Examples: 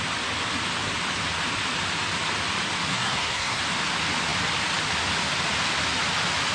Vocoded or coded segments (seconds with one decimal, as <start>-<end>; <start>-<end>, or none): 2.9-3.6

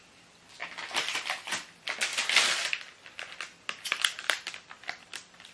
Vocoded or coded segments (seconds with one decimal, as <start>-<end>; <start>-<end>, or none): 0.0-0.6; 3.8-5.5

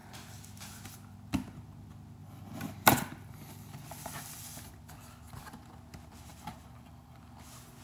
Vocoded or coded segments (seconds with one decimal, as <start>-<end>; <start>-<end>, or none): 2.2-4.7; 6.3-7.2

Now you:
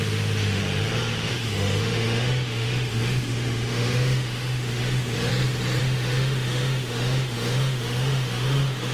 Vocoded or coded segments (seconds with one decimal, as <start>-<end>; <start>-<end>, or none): 0.0-0.6; 1.3-5.3; 5.8-8.9